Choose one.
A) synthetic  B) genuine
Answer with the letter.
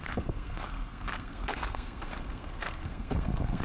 A